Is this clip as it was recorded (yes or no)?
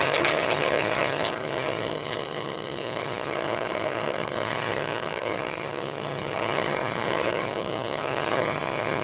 no